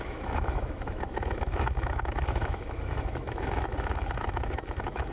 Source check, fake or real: fake